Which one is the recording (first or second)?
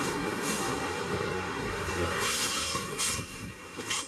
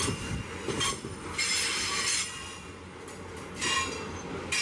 second